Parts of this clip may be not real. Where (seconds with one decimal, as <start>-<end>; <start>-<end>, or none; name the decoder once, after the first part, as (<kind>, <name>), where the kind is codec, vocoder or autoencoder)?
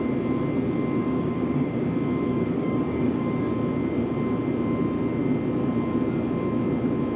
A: 1.0-1.8 (codec, DAC); 2.3-3.4